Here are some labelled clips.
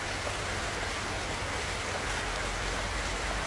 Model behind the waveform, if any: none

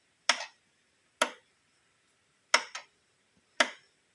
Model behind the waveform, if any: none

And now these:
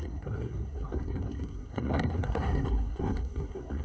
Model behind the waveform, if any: codec, SNAC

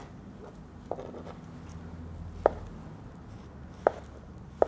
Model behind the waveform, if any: none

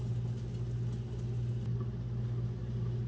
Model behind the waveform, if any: none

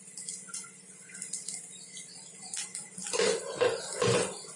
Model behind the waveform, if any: vocoder, BigVGAN v2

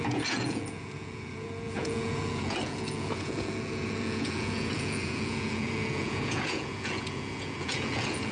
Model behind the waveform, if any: vocoder, Vocos